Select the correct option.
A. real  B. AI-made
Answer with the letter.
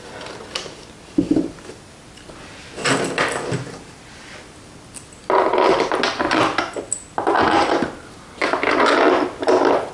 A